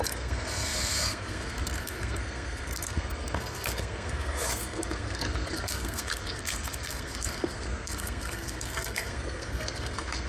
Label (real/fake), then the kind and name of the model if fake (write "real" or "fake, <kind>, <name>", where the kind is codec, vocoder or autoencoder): fake, codec, SNAC